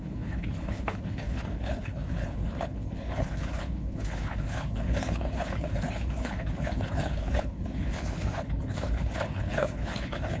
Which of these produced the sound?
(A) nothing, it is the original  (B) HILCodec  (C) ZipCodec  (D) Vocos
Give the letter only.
B